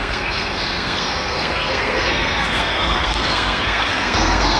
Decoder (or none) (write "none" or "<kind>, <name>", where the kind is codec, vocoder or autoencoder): codec, SNAC